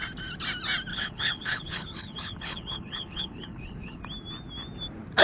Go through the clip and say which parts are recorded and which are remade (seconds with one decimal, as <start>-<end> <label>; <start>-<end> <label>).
0.0-0.9 recorded; 0.9-4.0 remade; 4.0-5.2 recorded